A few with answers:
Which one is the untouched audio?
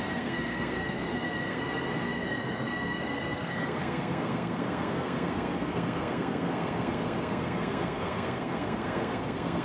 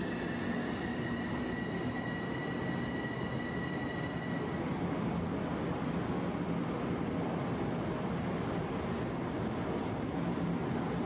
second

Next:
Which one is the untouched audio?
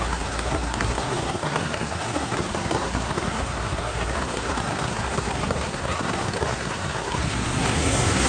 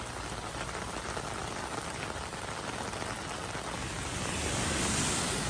second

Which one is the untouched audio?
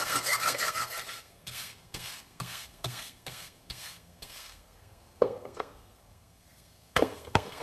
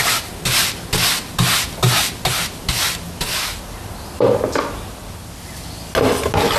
second